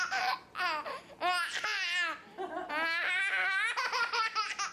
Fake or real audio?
real